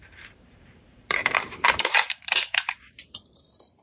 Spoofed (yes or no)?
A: yes